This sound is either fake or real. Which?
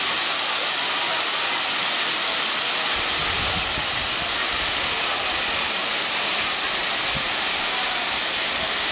real